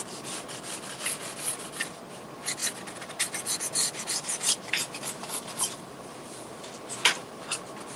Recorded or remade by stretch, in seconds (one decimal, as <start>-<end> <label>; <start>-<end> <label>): 0.0-8.0 recorded